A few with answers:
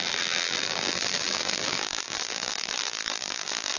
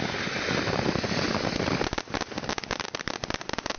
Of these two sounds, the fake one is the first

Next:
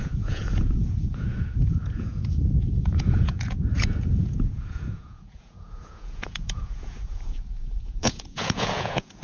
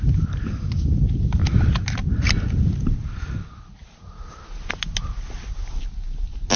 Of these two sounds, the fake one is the first